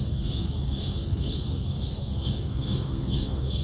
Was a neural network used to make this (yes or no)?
yes